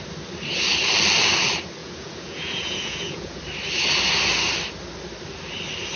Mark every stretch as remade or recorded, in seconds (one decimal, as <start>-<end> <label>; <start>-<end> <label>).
0.0-1.8 recorded; 1.8-3.4 remade; 3.4-6.0 recorded